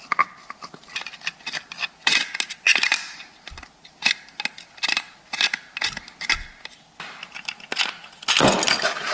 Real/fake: real